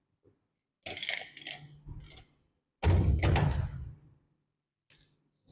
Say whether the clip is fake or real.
real